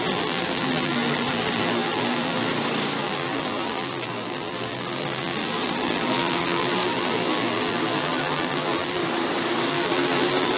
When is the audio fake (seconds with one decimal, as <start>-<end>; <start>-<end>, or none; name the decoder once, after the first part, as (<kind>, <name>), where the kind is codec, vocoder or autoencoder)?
0.0-2.5 (vocoder, BigVGAN v2); 3.0-9.0; 9.7-10.6